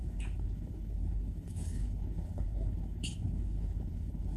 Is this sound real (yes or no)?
no